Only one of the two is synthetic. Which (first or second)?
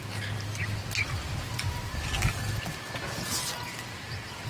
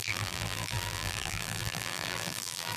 second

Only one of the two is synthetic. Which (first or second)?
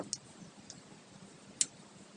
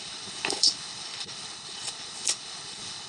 second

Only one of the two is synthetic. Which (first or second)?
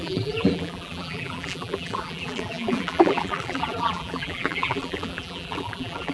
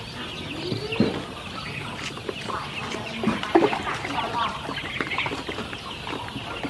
first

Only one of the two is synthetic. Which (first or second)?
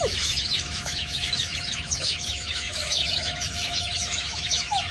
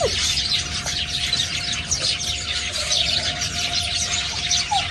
first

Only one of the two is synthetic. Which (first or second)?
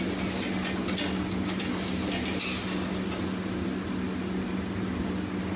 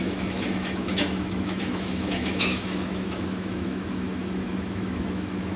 second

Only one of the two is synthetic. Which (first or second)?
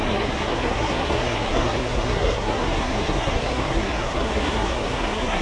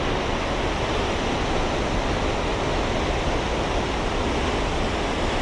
first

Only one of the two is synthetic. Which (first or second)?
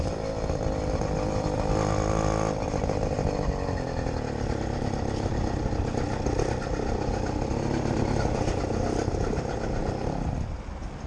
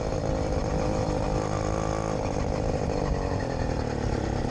second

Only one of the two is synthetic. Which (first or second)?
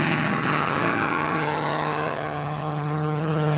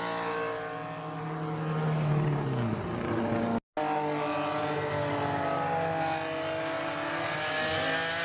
first